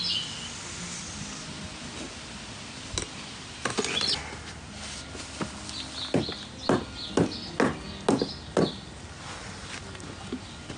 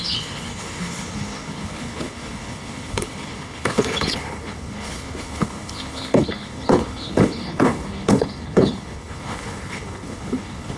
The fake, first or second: second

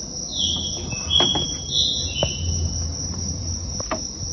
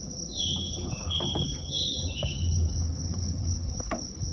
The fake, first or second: second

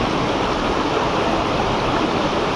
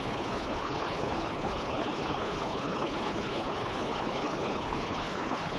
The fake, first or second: second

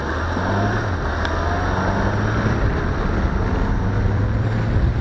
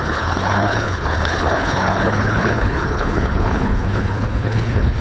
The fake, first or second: second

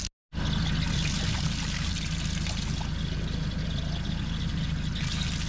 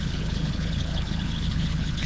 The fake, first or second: second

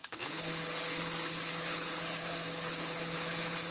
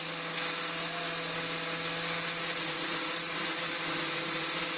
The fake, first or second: first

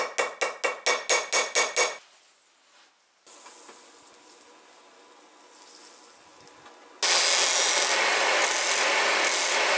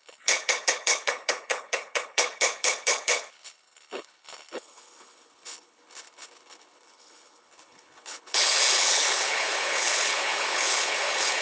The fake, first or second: second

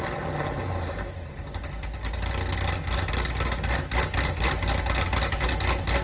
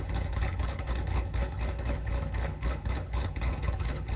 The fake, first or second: second